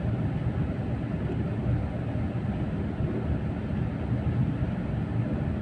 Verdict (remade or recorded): recorded